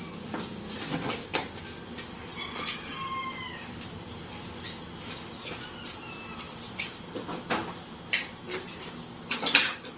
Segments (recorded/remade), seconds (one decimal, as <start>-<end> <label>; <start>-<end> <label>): 0.0-10.0 recorded